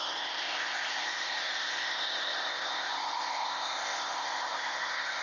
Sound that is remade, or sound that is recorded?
remade